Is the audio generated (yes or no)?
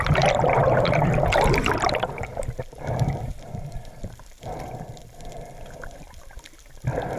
yes